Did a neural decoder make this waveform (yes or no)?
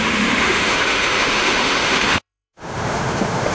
yes